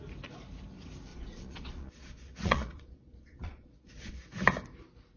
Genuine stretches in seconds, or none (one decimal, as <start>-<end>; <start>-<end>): 0.0-1.1; 4.2-5.2